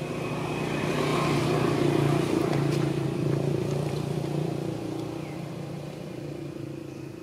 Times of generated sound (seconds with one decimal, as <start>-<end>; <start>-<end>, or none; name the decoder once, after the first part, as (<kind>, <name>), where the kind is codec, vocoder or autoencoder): 1.1-1.6 (vocoder, BigVGAN v2); 2.4-6.4